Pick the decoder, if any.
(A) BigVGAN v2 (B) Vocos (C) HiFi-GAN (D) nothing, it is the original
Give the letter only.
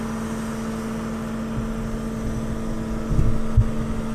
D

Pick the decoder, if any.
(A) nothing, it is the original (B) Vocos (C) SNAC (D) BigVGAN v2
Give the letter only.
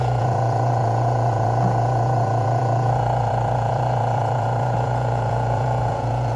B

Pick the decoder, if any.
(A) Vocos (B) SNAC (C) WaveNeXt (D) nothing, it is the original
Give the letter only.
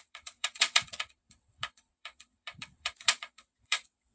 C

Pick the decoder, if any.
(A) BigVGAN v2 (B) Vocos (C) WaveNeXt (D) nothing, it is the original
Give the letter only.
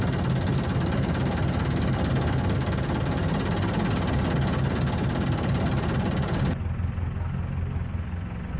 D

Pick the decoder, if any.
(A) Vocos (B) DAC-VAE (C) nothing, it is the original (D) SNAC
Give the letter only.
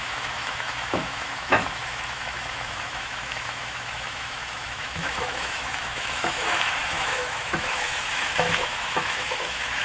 B